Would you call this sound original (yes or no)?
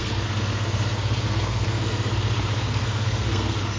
no